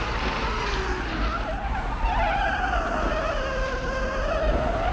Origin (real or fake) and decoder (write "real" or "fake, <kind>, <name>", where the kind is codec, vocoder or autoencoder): real